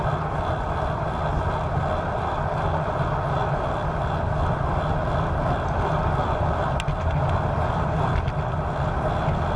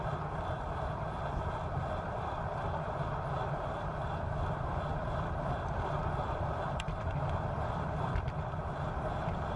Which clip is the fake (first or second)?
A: second